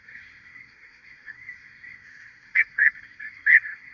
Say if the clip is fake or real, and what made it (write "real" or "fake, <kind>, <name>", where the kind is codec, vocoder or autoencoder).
fake, codec, SNAC